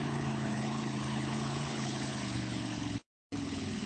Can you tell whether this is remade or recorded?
remade